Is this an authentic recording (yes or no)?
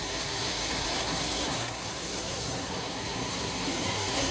no